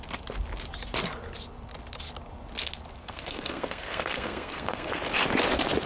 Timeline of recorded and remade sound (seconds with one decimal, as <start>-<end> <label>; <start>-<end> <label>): 0.0-3.0 recorded; 3.0-5.0 remade; 5.0-5.9 recorded